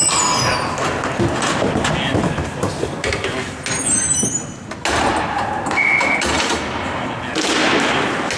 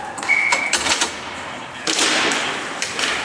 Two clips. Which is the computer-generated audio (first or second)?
second